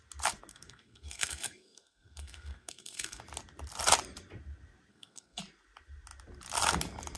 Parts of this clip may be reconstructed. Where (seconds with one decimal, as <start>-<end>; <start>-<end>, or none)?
0.5-3.2; 4.9-5.4